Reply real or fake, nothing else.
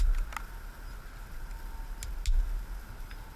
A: real